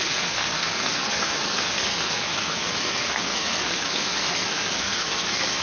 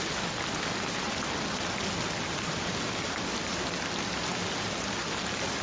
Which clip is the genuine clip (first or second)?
second